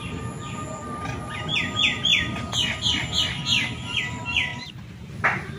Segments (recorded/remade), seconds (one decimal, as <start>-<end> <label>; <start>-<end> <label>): 0.0-4.5 recorded; 4.5-5.1 remade; 5.1-5.6 recorded